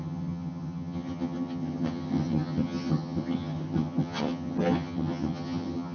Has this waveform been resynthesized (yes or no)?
yes